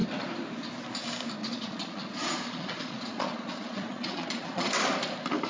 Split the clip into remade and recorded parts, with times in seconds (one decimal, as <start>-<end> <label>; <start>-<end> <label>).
0.0-1.4 recorded; 1.4-4.7 remade; 4.7-5.5 recorded